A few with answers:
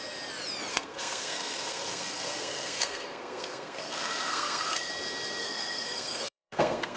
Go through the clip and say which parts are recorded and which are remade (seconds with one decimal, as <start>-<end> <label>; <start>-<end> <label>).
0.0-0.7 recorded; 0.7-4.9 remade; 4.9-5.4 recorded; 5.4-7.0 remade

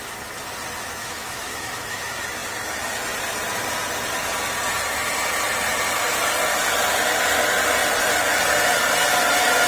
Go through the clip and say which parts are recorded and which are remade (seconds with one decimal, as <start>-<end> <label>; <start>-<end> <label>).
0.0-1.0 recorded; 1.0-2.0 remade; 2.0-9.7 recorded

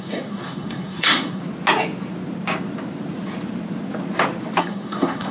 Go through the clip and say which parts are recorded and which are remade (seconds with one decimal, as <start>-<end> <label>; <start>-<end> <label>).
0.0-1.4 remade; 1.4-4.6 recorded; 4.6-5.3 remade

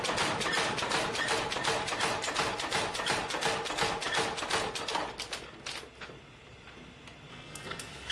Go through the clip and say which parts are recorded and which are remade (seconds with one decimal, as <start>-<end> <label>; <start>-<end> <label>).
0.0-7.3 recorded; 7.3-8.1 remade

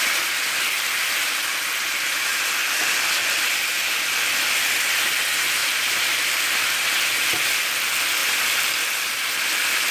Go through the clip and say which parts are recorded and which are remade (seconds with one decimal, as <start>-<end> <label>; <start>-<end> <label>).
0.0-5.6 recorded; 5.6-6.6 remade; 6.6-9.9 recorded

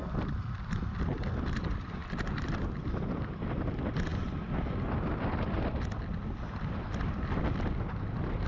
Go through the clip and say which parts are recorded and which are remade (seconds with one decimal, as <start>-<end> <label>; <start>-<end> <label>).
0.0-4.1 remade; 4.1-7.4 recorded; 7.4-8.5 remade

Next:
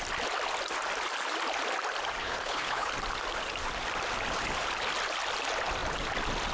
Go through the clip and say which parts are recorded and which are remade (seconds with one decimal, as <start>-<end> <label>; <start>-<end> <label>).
0.0-2.2 recorded; 2.2-2.9 remade; 2.9-6.5 recorded